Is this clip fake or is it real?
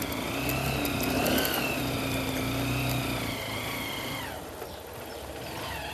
real